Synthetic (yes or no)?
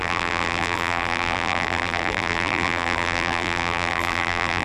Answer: yes